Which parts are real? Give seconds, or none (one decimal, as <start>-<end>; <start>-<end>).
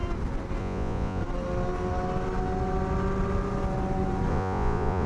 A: 0.0-0.6; 1.2-4.3